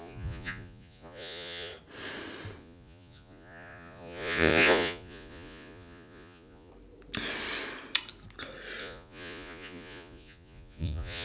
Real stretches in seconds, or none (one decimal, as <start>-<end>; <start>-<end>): 1.7-2.6; 6.7-8.8